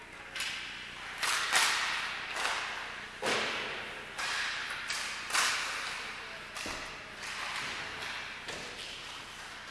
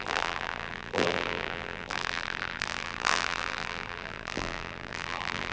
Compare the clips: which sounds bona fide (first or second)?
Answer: first